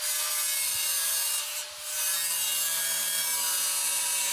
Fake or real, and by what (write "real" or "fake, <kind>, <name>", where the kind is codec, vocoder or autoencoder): real